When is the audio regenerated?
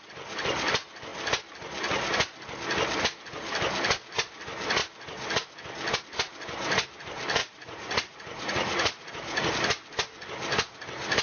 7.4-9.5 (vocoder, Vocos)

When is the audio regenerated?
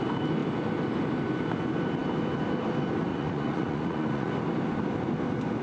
3.1-4.3 (vocoder, Vocos)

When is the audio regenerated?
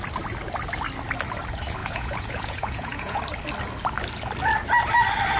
1.8-3.2 (vocoder, Vocos)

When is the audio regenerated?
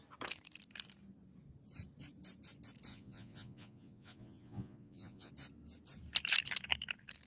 2.9-5.3 (vocoder, Vocos)